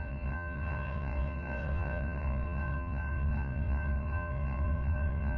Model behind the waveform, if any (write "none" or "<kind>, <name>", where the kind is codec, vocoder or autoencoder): vocoder, WaveNeXt